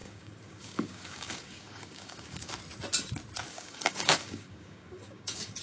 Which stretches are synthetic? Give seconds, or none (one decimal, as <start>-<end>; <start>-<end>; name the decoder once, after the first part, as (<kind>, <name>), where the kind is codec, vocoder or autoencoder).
0.0-2.6 (codec, DAC); 3.5-5.6